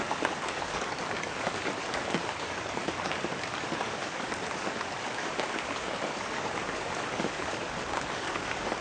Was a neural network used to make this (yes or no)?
yes